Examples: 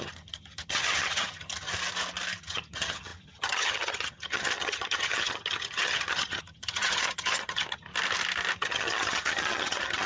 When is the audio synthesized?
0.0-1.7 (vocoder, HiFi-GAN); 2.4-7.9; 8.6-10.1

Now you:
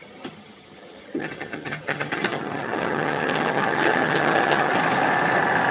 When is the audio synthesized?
0.0-4.7 (vocoder, HiFi-GAN)

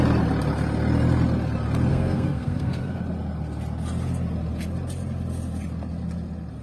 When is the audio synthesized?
1.9-3.0 (codec, SNAC)

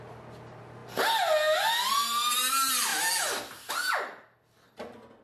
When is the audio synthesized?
none

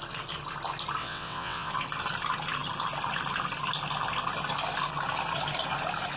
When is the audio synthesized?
1.0-1.7 (vocoder, WaveNeXt)